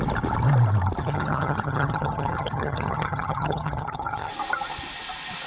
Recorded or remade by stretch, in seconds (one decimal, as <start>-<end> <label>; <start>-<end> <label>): 0.0-1.0 recorded; 1.0-4.3 remade; 4.3-5.5 recorded